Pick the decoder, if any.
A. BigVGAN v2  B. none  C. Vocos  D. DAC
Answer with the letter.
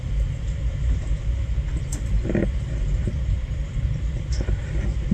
A